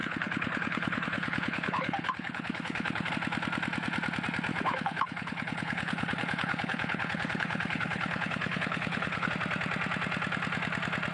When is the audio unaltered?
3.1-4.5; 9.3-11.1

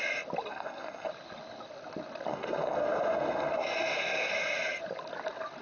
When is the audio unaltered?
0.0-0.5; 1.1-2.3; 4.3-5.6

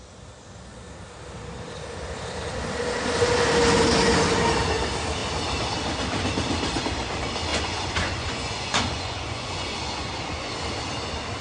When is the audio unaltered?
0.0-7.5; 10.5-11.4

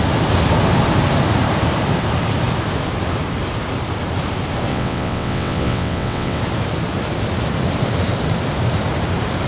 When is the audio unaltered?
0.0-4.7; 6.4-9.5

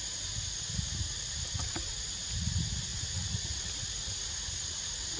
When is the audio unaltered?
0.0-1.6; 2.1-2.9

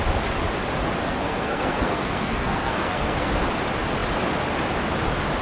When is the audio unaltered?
0.0-1.0; 3.3-5.4

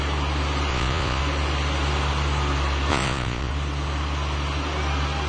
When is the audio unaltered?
0.0-0.7; 1.2-2.9; 3.5-5.3

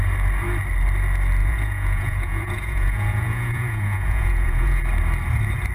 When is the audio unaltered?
0.0-1.4; 4.8-5.7